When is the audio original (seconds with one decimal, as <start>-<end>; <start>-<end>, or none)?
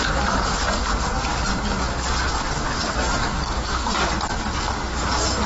0.0-3.2; 3.9-5.5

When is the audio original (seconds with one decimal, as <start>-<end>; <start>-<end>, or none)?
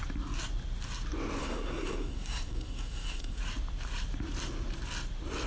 0.0-1.4; 3.4-5.5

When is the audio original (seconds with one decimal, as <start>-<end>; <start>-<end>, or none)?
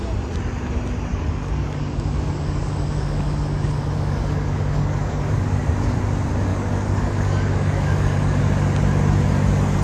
0.0-1.1; 5.6-6.5; 8.4-9.8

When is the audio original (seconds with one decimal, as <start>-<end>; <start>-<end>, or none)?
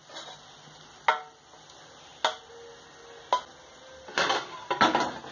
0.0-5.3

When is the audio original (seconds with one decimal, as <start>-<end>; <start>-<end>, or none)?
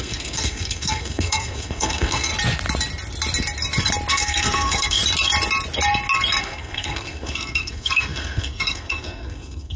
2.3-4.1; 5.0-6.4